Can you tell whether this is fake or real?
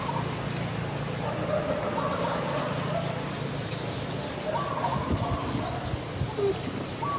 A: real